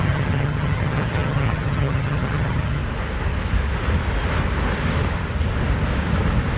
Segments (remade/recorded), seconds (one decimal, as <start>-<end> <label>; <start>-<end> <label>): 0.0-2.8 remade; 2.8-6.6 recorded